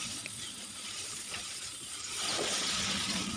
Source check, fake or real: fake